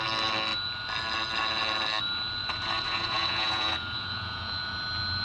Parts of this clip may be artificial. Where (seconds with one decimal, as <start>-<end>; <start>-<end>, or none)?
2.4-4.7